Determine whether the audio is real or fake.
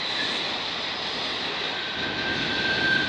real